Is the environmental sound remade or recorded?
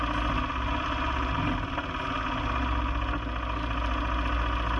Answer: recorded